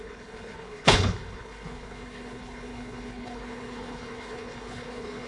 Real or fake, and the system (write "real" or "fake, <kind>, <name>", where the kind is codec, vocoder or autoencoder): fake, codec, HILCodec